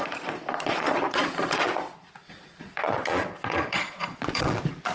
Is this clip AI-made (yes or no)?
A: yes